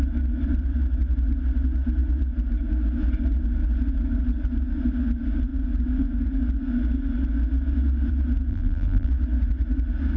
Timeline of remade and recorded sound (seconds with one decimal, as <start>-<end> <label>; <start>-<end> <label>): 0.0-8.5 recorded; 8.5-9.1 remade; 9.1-10.2 recorded